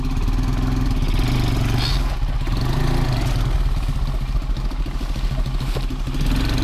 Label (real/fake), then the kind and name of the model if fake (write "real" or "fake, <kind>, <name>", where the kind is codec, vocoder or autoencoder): real